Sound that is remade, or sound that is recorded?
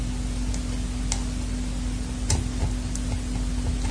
recorded